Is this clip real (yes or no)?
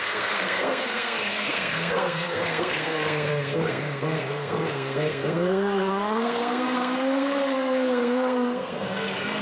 no